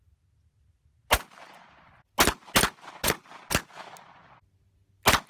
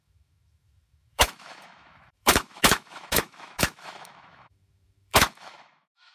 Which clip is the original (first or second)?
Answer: first